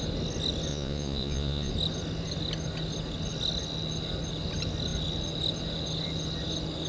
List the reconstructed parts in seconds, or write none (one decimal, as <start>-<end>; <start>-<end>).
0.7-1.7